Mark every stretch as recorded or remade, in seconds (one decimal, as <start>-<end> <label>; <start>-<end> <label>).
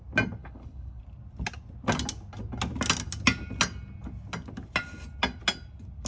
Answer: 0.0-0.4 recorded; 0.4-1.0 remade; 1.0-6.1 recorded